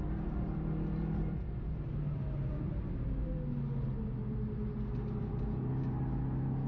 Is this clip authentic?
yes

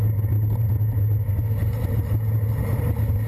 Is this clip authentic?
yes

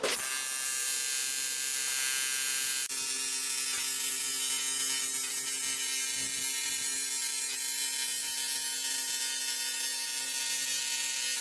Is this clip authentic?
yes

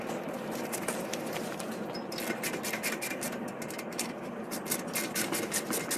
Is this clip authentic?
yes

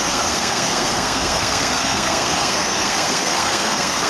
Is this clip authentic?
no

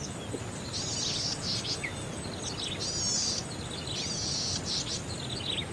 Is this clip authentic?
yes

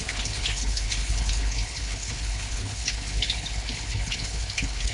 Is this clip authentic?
no